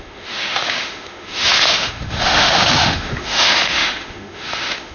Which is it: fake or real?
fake